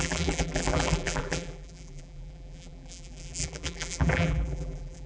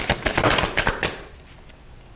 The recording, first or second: second